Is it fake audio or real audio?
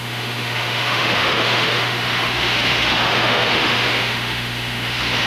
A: fake